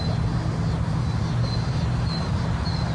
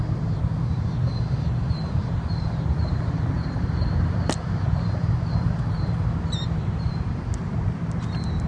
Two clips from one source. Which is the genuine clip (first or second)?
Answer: first